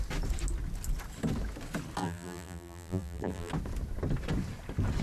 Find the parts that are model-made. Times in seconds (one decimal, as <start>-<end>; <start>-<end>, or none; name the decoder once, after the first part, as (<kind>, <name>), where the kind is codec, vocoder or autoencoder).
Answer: 2.0-3.5 (vocoder, BigVGAN v2)